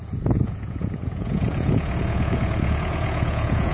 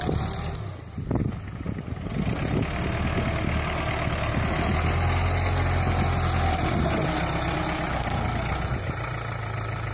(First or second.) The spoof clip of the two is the first